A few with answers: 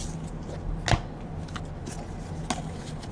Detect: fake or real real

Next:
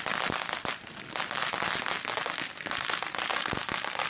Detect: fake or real real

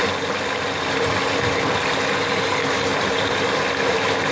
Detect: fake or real real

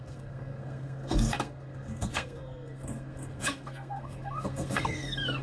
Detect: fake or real fake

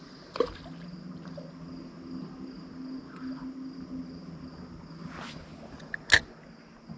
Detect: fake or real real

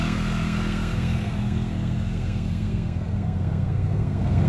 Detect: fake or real fake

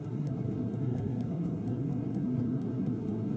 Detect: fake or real fake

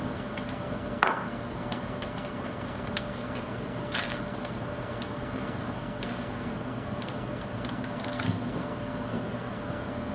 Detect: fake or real fake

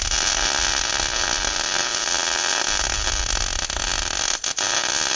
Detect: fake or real real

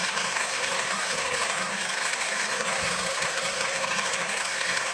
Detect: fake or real fake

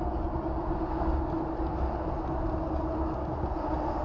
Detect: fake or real real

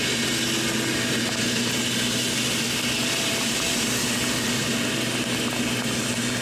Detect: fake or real real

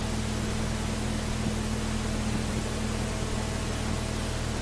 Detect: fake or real real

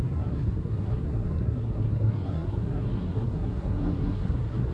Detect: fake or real fake